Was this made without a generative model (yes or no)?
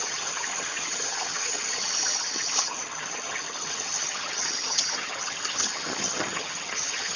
no